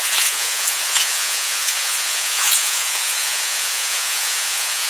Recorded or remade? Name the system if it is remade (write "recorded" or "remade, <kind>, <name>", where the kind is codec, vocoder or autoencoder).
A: remade, vocoder, Vocos